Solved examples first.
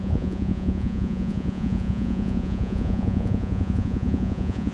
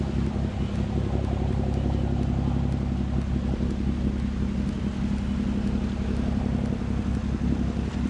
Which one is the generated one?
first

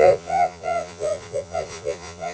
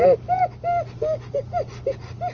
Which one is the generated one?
first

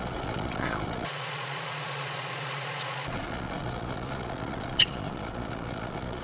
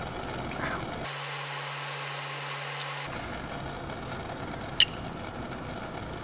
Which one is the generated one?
first